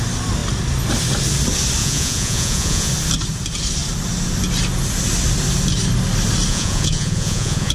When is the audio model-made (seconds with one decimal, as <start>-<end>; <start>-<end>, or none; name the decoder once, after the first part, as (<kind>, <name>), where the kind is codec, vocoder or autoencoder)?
1.8-2.9 (vocoder, Vocos); 6.5-7.7